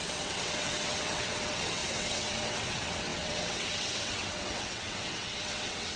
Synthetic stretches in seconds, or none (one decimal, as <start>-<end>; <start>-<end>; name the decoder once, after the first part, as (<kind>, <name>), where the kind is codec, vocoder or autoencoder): 0.0-6.0 (vocoder, WaveNeXt)